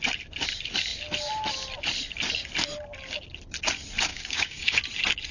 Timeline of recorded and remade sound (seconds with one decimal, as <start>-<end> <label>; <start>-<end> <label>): 0.0-4.1 recorded; 4.1-4.8 remade; 4.8-5.3 recorded